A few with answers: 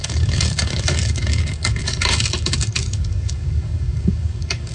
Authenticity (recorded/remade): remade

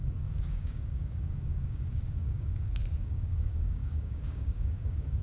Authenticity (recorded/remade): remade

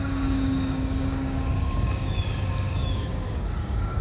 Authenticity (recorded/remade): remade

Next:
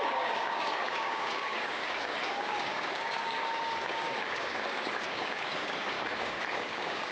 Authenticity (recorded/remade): remade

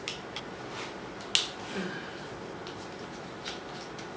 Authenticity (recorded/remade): recorded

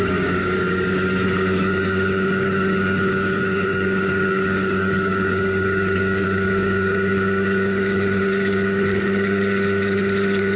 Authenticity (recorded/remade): remade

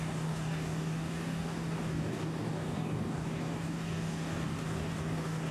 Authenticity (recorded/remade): remade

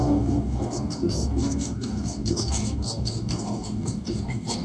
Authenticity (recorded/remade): remade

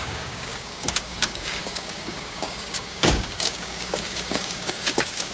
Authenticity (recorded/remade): remade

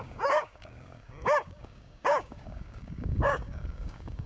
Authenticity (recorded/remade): remade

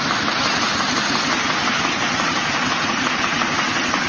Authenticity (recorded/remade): recorded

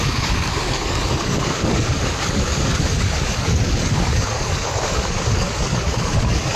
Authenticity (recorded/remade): remade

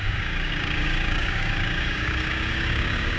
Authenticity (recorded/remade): remade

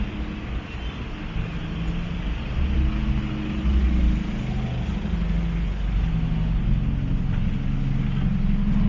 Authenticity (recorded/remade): recorded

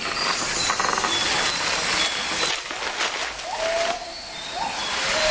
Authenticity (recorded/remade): recorded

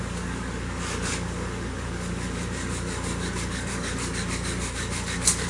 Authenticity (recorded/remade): remade